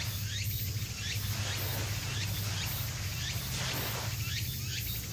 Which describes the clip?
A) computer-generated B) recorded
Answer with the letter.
B